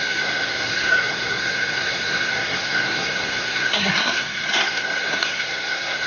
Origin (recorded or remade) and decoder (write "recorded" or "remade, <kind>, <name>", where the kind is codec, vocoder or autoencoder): remade, codec, SNAC